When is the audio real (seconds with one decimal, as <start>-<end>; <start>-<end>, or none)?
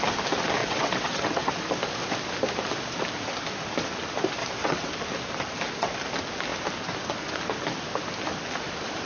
0.0-0.6; 1.5-4.4; 4.9-9.1